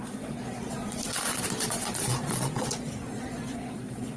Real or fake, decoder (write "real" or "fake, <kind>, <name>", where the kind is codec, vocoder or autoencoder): fake, vocoder, Vocos